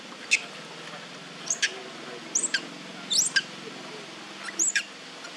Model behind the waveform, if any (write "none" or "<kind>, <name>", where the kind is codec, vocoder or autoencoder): none